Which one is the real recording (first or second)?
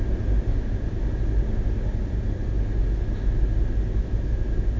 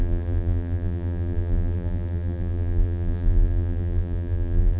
first